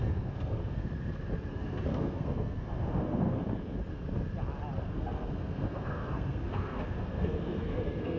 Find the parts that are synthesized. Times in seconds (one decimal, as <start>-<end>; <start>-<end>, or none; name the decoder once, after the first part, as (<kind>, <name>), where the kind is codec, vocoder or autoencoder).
0.0-0.8 (codec, SNAC); 1.5-3.4; 4.8-8.2